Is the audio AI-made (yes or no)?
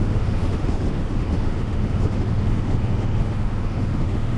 yes